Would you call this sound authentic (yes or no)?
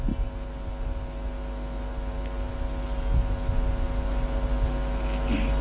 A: yes